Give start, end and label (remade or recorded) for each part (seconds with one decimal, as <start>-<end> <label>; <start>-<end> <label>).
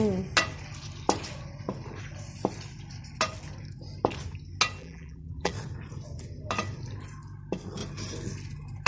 0.0-4.8 recorded; 4.8-5.5 remade; 5.5-8.9 recorded